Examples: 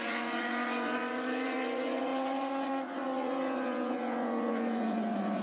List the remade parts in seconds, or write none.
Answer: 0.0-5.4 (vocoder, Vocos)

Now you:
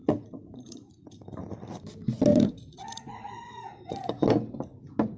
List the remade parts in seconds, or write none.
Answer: 0.0-1.1 (vocoder, Vocos); 2.3-4.1

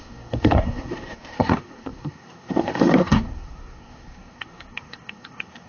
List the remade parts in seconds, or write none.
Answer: 0.0-5.7 (codec, SNAC)

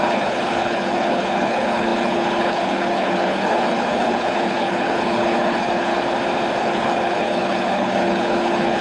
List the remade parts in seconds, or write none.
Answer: 0.0-5.9 (codec, HILCodec); 6.6-8.8

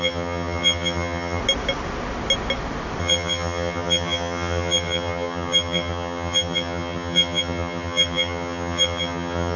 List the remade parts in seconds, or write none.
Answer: 0.0-1.4 (vocoder, HiFi-GAN); 3.0-9.6

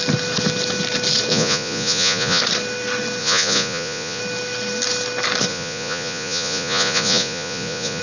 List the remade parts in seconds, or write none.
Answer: 1.3-2.4 (vocoder, Vocos); 3.2-4.2; 5.5-8.0

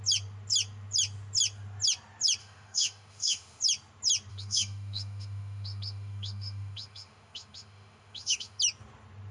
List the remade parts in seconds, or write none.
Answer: 2.4-3.6 (autoencoder, DAC-VAE); 4.3-8.6

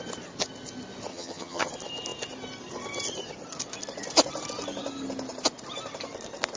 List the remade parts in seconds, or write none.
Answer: 1.1-1.7 (vocoder, HiFi-GAN)